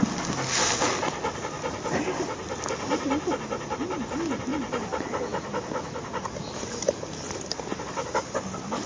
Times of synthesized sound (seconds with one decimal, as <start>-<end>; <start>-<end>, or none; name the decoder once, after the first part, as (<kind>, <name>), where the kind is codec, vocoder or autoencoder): none